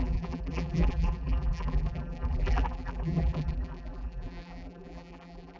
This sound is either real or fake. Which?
fake